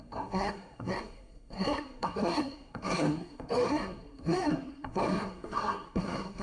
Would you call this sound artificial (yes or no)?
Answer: yes